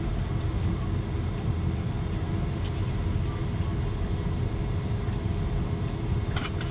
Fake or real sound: real